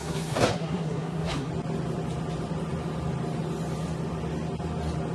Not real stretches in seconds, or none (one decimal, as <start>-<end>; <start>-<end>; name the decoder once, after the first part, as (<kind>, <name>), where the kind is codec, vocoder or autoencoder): 0.0-1.5 (codec, SNAC)

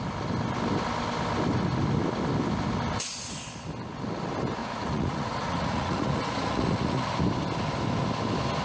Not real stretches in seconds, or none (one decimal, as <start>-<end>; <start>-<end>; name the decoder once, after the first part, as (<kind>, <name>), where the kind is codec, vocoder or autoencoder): 4.6-7.1 (vocoder, Vocos)

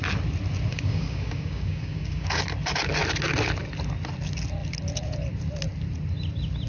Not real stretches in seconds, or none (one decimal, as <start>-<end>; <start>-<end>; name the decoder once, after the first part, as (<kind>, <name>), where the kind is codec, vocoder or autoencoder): 0.7-2.4 (codec, DAC)

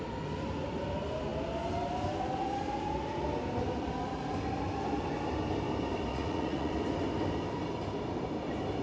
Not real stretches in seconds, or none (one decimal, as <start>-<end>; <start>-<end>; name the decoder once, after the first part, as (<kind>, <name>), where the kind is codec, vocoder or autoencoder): 6.1-6.7 (vocoder, Vocos)

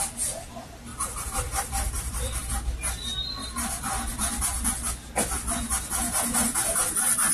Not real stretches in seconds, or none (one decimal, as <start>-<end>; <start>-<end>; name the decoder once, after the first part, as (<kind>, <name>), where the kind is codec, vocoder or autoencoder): 0.9-2.5 (vocoder, BigVGAN v2)

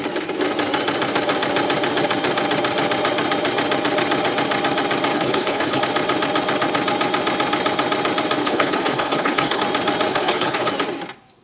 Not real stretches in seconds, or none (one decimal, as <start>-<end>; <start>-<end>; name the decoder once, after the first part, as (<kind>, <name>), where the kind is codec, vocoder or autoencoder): 5.1-5.8 (codec, HILCodec); 8.4-9.6; 10.1-10.7

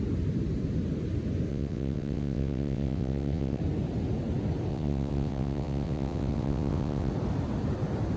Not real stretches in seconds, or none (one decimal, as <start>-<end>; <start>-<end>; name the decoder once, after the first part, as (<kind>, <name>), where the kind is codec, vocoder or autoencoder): 1.5-3.6 (vocoder, WaveNeXt); 4.7-7.1

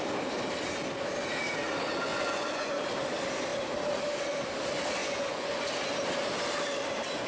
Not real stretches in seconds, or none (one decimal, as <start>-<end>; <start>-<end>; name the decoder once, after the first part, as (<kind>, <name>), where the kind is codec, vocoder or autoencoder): 2.1-2.7 (vocoder, Vocos); 5.0-5.7